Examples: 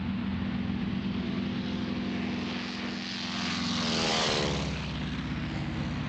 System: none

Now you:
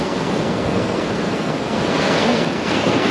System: codec, SNAC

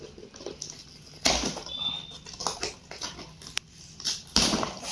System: none